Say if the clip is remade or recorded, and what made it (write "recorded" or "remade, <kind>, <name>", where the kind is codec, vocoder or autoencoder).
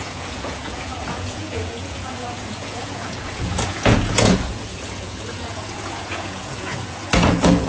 remade, vocoder, Vocos